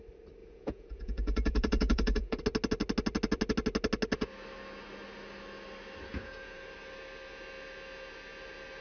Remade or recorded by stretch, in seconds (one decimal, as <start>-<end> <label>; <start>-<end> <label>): 0.0-0.4 recorded; 0.4-2.4 remade; 2.4-6.1 recorded; 6.1-6.6 remade; 6.6-8.8 recorded